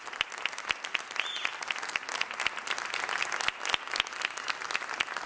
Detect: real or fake real